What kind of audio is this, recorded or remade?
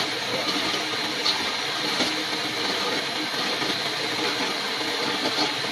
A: recorded